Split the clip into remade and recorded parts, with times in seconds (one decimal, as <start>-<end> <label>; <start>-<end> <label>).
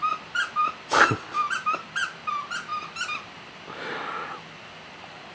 0.0-5.3 recorded